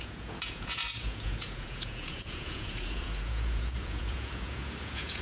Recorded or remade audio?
remade